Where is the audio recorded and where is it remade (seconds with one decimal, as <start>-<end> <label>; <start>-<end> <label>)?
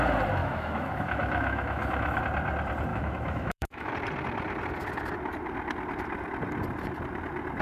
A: 0.0-0.4 recorded; 0.4-2.2 remade; 2.2-2.9 recorded; 2.9-3.9 remade; 3.9-7.6 recorded